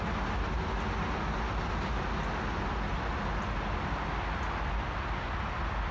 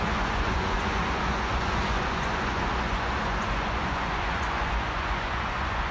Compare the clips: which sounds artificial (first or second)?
second